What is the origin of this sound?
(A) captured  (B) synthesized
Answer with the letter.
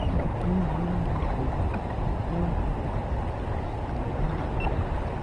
A